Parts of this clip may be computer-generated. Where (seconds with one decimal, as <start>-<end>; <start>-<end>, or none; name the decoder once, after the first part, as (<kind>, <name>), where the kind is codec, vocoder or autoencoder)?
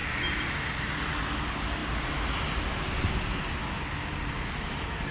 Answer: none